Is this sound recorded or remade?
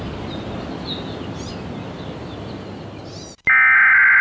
recorded